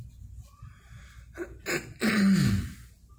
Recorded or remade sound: recorded